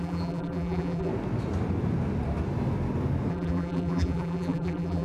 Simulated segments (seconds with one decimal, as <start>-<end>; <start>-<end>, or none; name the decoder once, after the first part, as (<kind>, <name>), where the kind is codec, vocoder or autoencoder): 0.0-1.1 (vocoder, BigVGAN v2); 3.3-5.0